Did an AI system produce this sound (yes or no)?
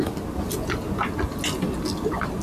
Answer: no